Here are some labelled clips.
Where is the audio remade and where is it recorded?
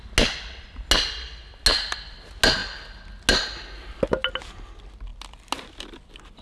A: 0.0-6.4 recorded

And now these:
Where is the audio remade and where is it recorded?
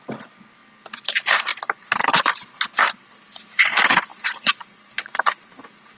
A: 0.0-4.1 recorded; 4.1-6.0 remade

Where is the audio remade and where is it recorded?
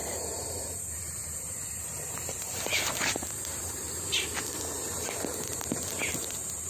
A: 0.0-4.0 remade; 4.0-6.7 recorded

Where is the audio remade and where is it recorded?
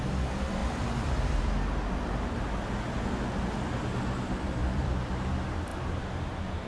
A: 0.0-0.6 recorded; 0.6-1.4 remade; 1.4-4.6 recorded; 4.6-5.2 remade; 5.2-6.7 recorded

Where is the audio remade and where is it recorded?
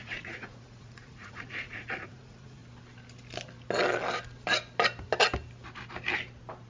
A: 0.0-2.6 remade; 2.6-6.7 recorded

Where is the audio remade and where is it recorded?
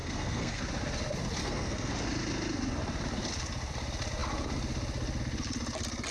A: 0.0-0.6 remade; 0.6-1.4 recorded; 1.4-1.9 remade; 1.9-6.1 recorded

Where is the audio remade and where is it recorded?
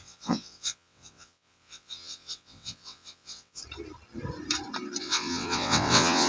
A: 0.0-3.6 remade; 3.6-5.0 recorded; 5.0-6.3 remade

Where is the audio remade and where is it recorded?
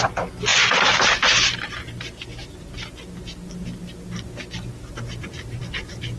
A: 0.0-6.2 recorded